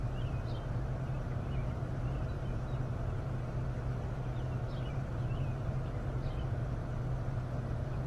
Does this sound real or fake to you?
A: fake